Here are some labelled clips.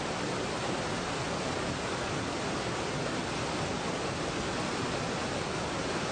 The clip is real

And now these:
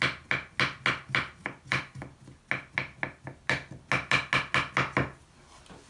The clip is real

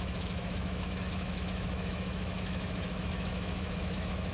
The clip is fake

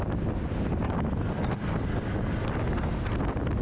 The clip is real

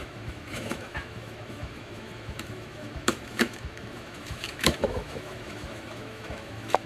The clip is fake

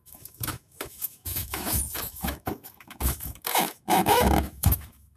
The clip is fake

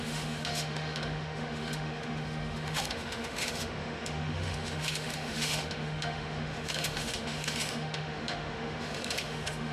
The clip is fake